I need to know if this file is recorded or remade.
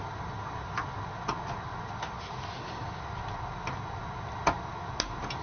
recorded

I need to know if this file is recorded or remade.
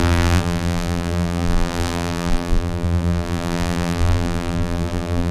remade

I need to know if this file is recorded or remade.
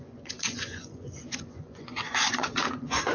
remade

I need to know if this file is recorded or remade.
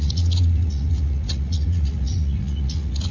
remade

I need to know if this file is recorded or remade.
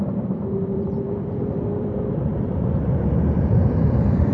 remade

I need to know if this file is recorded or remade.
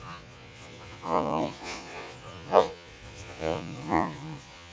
remade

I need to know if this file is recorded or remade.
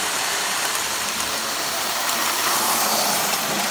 remade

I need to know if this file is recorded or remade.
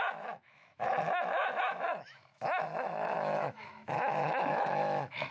remade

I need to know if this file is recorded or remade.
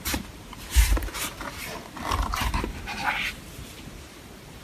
remade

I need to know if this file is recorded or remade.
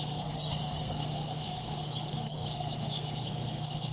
remade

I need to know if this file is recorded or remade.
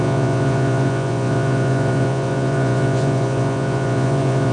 remade